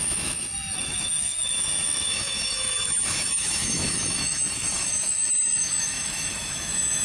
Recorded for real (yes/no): no